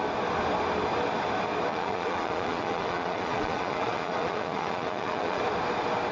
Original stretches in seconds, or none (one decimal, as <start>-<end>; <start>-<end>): 0.0-1.7; 5.4-6.1